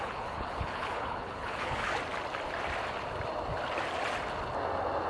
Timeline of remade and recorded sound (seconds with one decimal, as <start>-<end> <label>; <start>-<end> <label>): 0.0-1.9 remade; 1.9-5.1 recorded